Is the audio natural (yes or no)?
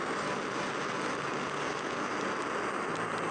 yes